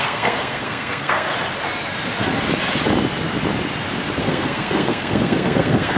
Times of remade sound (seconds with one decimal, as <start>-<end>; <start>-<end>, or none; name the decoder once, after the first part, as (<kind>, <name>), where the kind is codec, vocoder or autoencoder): 0.0-1.3 (codec, SNAC); 4.2-6.0